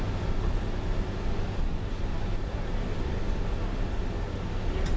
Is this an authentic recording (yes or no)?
yes